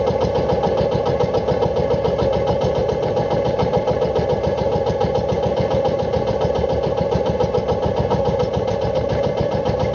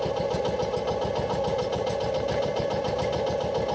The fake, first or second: first